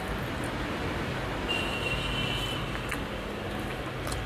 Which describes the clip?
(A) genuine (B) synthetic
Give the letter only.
A